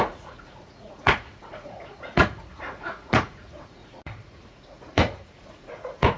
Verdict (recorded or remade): remade